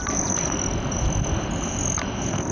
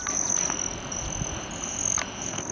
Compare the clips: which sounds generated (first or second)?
first